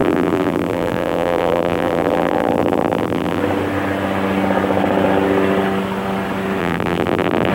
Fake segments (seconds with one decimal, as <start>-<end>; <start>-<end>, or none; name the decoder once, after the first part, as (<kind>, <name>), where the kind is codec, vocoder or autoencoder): 0.0-3.4 (vocoder, BigVGAN v2); 6.6-7.5

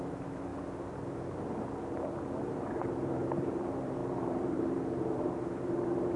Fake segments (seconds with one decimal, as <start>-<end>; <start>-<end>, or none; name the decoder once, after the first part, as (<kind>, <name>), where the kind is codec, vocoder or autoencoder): 0.0-0.5 (vocoder, BigVGAN v2); 2.5-6.2

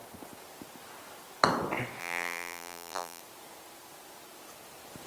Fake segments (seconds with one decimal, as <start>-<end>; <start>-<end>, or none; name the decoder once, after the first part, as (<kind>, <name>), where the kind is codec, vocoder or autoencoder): 2.0-3.2 (vocoder, BigVGAN v2)

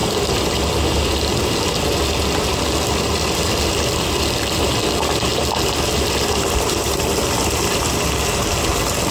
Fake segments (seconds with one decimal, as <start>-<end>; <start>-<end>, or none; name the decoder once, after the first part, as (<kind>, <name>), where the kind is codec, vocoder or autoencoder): 5.3-8.2 (vocoder, BigVGAN v2)